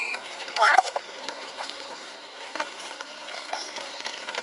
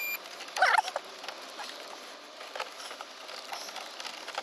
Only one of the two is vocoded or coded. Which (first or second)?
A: first